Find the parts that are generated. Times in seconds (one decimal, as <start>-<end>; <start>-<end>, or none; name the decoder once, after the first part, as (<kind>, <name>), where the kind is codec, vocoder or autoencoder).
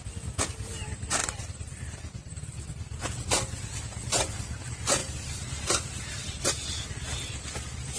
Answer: 1.2-3.0 (vocoder, BigVGAN v2)